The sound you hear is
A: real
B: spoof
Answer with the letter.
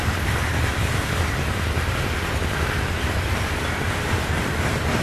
A